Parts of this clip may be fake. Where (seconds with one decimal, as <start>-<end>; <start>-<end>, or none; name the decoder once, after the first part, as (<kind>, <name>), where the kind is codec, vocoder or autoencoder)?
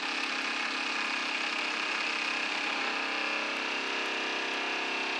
none